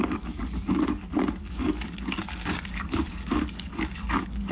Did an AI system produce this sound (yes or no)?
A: yes